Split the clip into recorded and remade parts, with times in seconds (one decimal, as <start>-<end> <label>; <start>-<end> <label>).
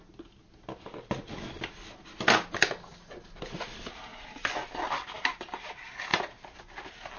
0.0-7.2 recorded